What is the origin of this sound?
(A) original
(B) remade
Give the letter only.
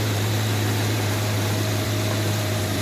B